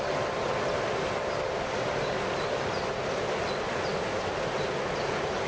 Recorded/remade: recorded